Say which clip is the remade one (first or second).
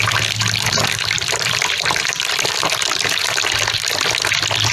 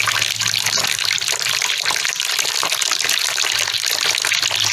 first